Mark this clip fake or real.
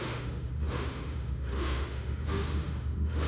fake